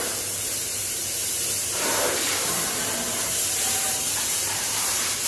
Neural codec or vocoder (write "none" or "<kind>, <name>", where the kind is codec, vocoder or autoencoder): vocoder, BigVGAN v2